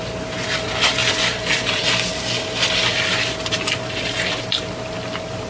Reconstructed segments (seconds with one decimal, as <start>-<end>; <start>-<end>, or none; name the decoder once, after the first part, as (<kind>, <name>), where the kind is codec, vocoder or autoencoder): none